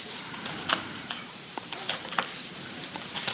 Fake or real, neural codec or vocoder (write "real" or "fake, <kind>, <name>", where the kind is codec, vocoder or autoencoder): fake, vocoder, BigVGAN v2